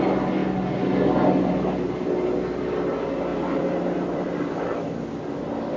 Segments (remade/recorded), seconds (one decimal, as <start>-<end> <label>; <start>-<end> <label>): 0.0-5.8 recorded